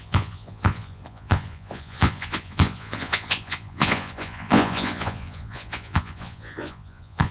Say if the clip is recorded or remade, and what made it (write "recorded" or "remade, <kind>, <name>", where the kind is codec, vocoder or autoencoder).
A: remade, vocoder, Vocos